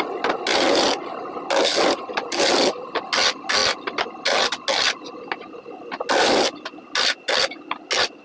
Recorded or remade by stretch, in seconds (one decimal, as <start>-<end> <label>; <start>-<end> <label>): 0.0-8.2 recorded